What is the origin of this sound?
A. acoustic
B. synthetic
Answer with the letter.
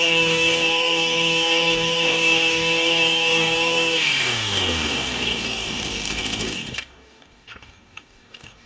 B